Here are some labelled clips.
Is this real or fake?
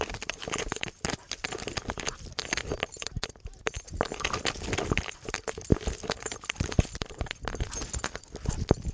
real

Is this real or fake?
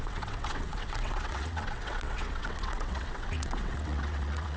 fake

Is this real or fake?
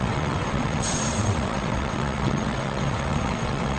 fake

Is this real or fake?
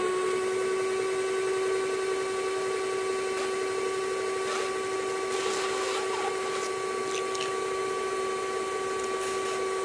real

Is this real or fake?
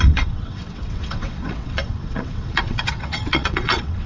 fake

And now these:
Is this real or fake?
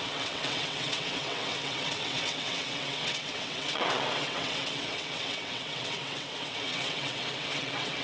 fake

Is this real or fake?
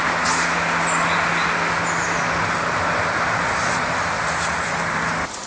real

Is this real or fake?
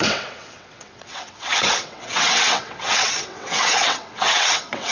fake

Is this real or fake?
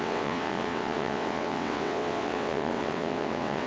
fake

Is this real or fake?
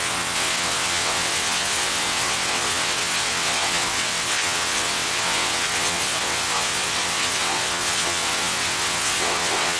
fake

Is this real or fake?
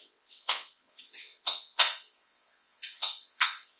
fake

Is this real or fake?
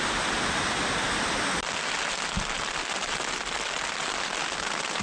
real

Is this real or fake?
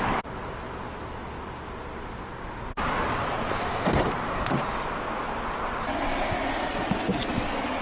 real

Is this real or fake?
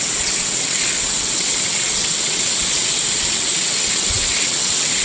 fake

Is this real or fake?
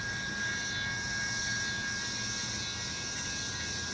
real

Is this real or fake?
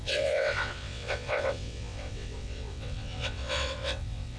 fake